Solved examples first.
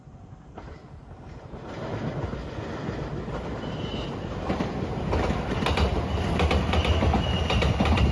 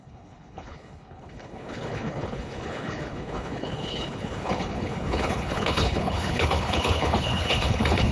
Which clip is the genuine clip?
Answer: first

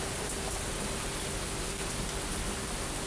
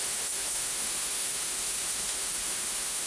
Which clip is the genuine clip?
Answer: first